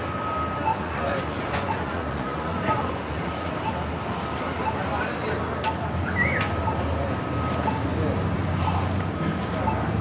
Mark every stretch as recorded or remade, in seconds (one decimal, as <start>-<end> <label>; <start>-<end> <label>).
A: 0.0-0.7 recorded; 0.7-3.5 remade; 3.5-10.0 recorded